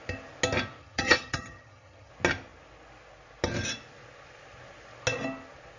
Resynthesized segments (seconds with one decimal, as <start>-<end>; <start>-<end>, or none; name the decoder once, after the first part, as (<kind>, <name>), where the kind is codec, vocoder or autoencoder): 0.8-2.1 (vocoder, HiFi-GAN)